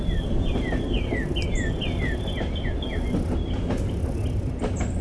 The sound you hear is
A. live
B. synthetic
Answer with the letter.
A